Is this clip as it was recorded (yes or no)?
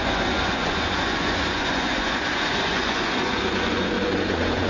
no